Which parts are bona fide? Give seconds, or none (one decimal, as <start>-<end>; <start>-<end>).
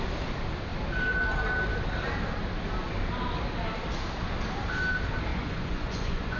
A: 0.0-5.3